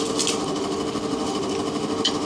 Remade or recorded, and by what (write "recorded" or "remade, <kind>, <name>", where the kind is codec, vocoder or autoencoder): recorded